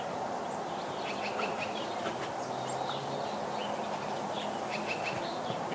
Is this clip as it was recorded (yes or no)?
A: yes